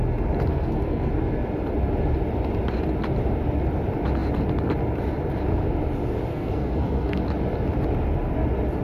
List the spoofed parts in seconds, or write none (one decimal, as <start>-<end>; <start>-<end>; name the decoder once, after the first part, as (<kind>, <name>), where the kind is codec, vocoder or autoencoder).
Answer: 0.5-1.1 (codec, SNAC); 6.3-7.2